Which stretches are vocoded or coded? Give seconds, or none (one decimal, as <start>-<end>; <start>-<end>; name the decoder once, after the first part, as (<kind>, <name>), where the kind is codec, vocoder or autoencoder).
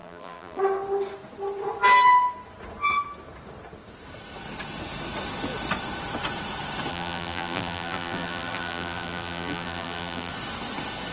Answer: 0.0-0.6 (vocoder, BigVGAN v2); 6.9-10.3